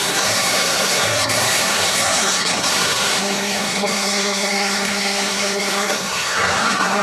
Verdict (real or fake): fake